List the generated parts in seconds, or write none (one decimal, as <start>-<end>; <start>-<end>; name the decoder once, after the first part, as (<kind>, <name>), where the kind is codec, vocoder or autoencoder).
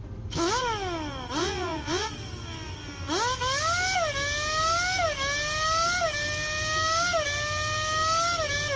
1.4-2.1 (vocoder, Vocos)